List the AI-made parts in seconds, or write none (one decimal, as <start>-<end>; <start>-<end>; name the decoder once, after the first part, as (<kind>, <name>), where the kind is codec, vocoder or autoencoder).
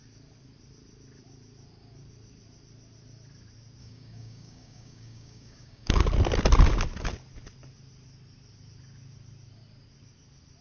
3.8-6.0 (codec, DAC)